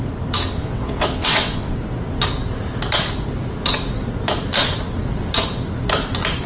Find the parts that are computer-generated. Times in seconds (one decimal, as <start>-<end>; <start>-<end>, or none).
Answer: 0.6-1.7